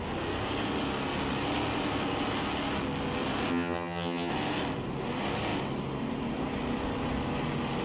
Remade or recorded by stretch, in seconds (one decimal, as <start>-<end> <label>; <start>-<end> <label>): 0.0-3.5 recorded; 3.5-4.3 remade; 4.3-7.8 recorded

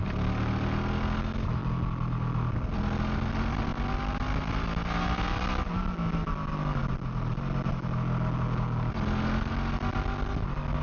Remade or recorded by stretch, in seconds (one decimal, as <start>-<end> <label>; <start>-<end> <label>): 0.0-10.8 recorded

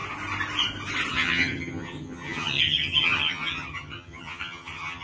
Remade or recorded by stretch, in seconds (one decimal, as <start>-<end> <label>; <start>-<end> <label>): 0.0-1.1 recorded; 1.1-5.0 remade

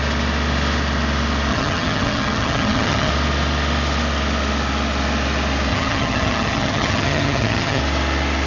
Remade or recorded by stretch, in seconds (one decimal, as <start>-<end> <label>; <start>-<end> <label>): 0.0-1.5 recorded; 1.5-3.1 remade; 3.1-5.7 recorded; 5.7-7.8 remade; 7.8-8.5 recorded

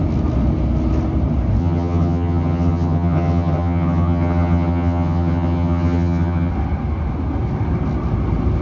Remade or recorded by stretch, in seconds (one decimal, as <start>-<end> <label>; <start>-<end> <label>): 0.0-1.6 recorded; 1.6-6.5 remade; 6.5-8.6 recorded

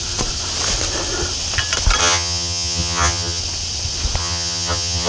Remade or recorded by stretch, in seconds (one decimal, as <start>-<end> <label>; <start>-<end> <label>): 0.0-2.0 recorded; 2.0-3.4 remade; 3.4-4.2 recorded; 4.2-5.1 remade